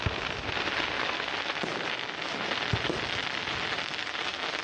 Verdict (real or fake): real